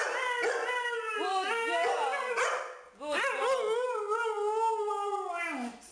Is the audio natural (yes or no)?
yes